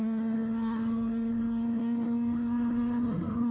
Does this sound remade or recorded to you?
remade